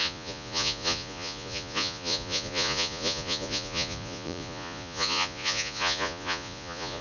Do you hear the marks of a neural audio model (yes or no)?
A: yes